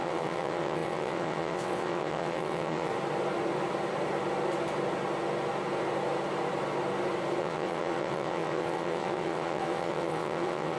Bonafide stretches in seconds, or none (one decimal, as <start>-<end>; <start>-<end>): 2.9-7.4